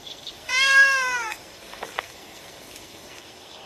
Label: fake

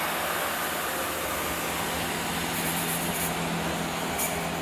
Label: real